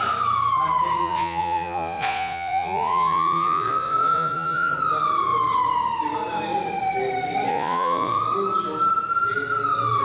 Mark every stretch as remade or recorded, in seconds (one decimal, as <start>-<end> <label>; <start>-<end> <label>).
0.0-1.0 recorded; 1.0-4.7 remade; 4.7-7.5 recorded; 7.5-8.2 remade; 8.2-10.0 recorded